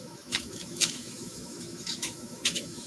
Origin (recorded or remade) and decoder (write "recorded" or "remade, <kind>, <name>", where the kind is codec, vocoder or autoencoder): remade, autoencoder, DAC-VAE